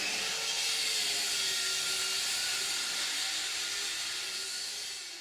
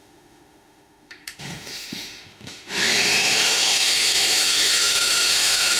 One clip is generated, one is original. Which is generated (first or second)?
second